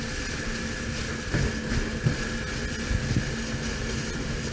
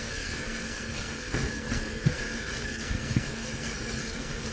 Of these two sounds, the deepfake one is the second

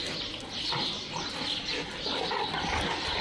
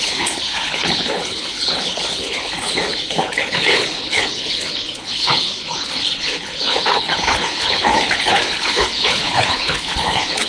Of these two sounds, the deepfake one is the second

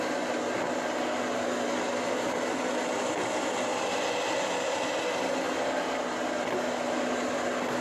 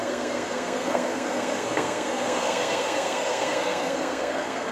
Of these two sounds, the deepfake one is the second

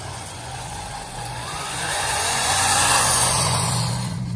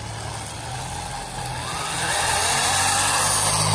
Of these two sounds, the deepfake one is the first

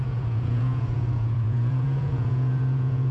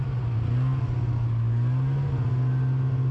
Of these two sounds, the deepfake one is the first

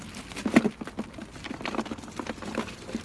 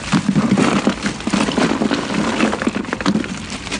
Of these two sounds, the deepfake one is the second